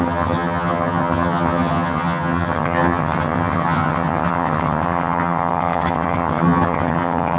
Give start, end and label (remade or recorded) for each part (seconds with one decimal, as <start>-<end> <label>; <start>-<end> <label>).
0.0-7.4 remade